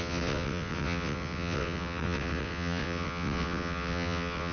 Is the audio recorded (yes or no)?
no